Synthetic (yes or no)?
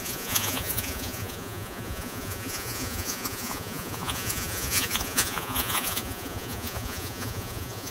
yes